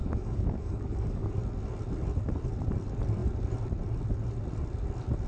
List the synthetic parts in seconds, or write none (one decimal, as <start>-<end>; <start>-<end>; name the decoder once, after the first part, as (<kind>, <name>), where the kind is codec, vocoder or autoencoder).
0.0-1.3 (codec, DAC)